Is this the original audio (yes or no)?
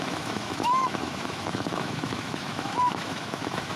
no